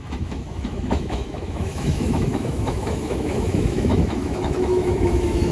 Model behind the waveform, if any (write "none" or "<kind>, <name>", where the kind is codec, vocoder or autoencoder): autoencoder, DAC-VAE